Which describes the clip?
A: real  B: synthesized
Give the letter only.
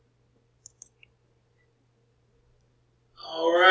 A